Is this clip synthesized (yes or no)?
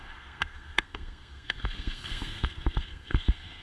yes